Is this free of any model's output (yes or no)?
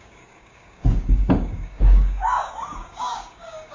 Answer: no